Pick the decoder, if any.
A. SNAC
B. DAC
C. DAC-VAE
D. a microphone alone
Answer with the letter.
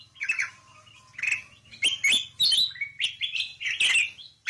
D